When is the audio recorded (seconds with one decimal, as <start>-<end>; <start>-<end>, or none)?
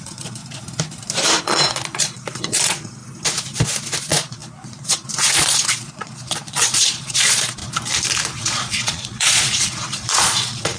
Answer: 0.4-1.4; 3.0-4.0; 7.6-8.4